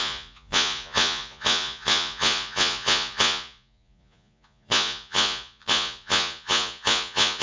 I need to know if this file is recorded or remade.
remade